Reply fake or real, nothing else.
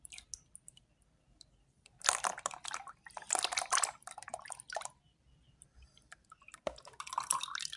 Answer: real